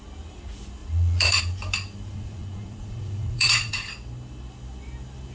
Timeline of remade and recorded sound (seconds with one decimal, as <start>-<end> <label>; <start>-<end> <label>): 0.0-0.8 recorded; 0.8-1.4 remade; 1.4-2.1 recorded; 2.1-3.9 remade; 3.9-5.3 recorded